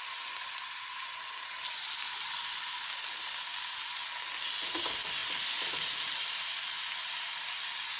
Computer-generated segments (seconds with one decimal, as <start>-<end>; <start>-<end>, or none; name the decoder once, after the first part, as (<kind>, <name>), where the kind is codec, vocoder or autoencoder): 5.2-6.6 (vocoder, BigVGAN v2)